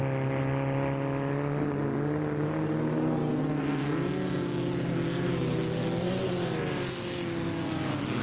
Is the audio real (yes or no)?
yes